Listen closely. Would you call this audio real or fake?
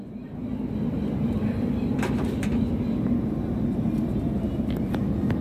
real